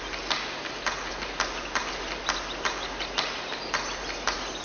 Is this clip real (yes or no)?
yes